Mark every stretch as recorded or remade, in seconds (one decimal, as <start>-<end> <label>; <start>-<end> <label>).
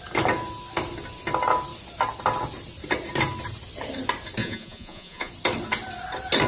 0.0-4.4 recorded; 4.4-5.3 remade; 5.3-6.5 recorded